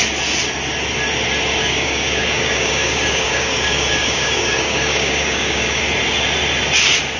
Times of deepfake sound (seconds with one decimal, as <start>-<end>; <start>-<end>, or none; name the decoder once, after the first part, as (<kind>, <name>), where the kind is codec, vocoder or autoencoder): 1.6-5.8 (codec, DAC)